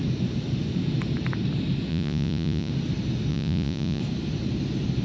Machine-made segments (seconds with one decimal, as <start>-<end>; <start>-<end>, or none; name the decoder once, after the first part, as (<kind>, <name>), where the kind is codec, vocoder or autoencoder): 1.9-2.7 (vocoder, Vocos); 3.3-4.0